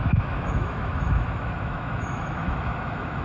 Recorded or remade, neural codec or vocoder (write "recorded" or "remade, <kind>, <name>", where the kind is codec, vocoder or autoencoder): remade, autoencoder, DAC-VAE